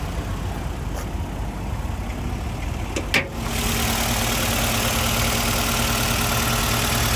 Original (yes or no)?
yes